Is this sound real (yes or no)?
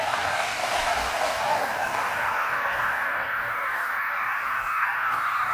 no